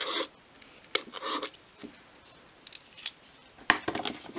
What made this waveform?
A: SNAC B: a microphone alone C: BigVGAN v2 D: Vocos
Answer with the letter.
B